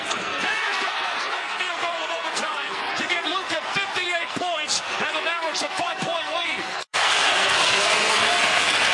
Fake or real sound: fake